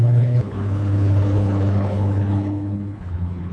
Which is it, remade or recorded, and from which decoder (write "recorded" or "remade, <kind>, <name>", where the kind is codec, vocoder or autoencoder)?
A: remade, codec, HILCodec